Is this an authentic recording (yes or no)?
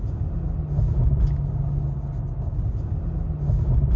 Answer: yes